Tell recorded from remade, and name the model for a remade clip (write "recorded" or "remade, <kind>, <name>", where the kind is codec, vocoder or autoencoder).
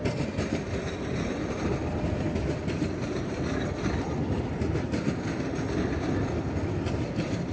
recorded